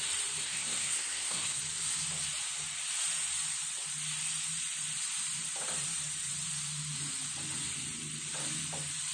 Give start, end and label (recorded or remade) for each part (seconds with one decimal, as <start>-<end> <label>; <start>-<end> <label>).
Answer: 0.0-0.4 recorded; 0.4-1.6 remade; 1.6-9.1 recorded